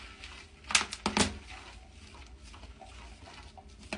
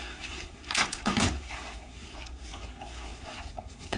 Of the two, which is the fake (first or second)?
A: second